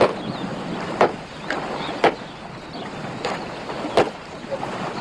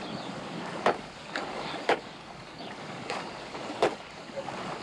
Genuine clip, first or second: first